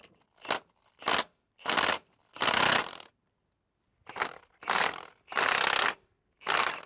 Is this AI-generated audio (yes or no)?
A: no